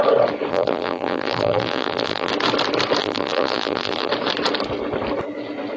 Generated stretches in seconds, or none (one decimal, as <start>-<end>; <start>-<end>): 0.5-2.3; 3.0-4.1